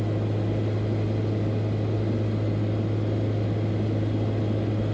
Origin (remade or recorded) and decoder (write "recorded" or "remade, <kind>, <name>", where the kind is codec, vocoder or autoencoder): recorded